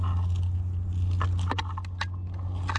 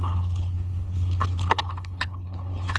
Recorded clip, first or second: first